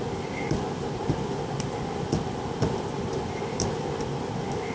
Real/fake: real